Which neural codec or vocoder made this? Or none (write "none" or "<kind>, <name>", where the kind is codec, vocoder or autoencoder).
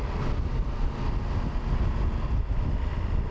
none